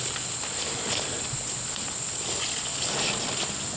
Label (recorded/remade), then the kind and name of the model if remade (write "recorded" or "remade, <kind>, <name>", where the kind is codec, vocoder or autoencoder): recorded